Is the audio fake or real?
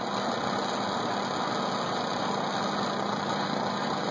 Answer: real